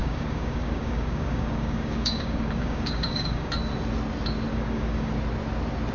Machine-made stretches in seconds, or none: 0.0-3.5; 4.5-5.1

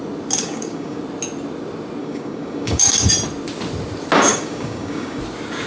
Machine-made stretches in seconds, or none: 0.4-1.0; 2.0-3.1; 4.3-5.2